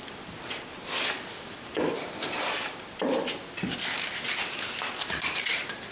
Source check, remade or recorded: recorded